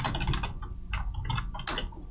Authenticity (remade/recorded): recorded